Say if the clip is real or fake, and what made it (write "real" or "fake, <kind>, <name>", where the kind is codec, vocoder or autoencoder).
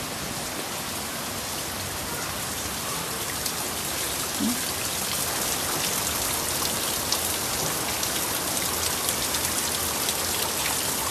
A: real